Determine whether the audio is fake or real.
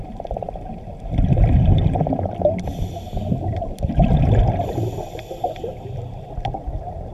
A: fake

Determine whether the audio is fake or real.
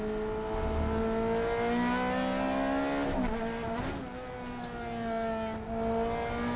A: real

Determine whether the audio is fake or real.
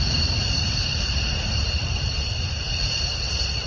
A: fake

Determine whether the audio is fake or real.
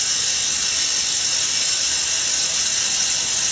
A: real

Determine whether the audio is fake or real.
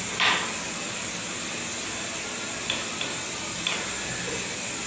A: real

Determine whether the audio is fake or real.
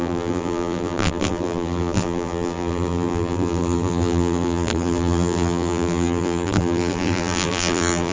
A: fake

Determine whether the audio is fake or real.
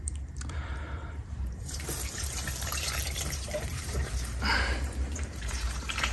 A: fake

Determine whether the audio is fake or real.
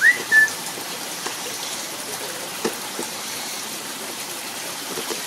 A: fake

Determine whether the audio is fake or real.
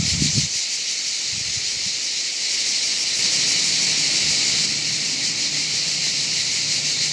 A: fake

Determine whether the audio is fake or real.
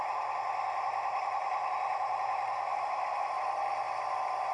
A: fake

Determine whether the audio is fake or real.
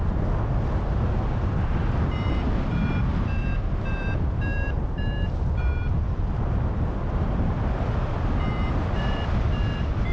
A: fake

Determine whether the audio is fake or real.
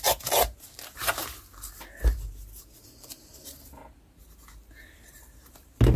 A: real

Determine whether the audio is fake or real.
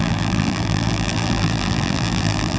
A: fake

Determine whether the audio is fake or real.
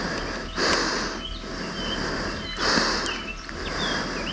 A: real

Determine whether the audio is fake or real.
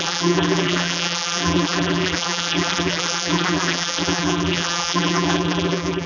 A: fake